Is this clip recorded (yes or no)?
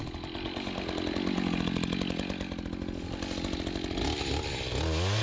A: yes